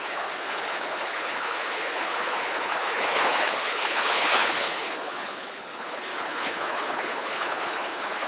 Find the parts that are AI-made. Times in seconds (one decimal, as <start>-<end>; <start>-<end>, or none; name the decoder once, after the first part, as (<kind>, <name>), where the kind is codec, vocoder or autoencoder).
0.0-8.3 (codec, HILCodec)